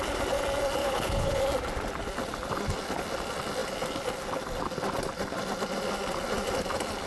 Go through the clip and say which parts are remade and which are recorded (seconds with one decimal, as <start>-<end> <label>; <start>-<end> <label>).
0.0-0.8 recorded; 0.8-1.4 remade; 1.4-7.1 recorded